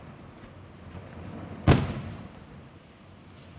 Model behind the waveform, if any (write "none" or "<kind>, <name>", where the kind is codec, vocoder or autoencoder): none